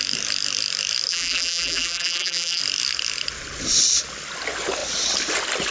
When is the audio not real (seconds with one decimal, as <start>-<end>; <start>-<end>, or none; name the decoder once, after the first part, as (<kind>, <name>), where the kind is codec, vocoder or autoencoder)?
1.1-2.6 (vocoder, BigVGAN v2)

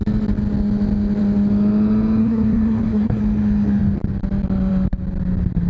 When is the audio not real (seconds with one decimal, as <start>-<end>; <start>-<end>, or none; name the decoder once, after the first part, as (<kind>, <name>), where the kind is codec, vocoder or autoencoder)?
2.2-3.2 (codec, SNAC)

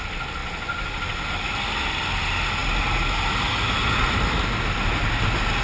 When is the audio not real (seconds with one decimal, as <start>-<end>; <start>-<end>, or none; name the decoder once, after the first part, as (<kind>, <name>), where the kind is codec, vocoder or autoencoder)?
none

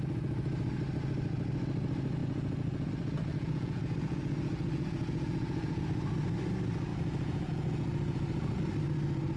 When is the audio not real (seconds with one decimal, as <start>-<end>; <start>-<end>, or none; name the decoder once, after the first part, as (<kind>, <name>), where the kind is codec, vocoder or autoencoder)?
2.2-2.9 (vocoder, Vocos); 3.3-5.8; 6.9-8.6

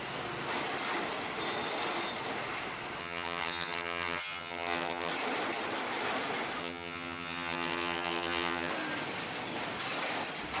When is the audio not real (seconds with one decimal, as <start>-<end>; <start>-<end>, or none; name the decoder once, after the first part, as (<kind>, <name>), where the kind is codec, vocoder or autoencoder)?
3.0-5.1 (vocoder, HiFi-GAN); 6.6-8.7